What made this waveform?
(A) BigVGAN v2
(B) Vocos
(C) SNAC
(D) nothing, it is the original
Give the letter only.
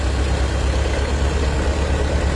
D